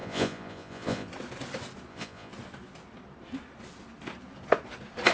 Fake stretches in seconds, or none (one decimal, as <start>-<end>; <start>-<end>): 0.0-1.1; 1.9-2.3